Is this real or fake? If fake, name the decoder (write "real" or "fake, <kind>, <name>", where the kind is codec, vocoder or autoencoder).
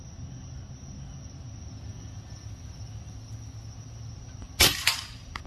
real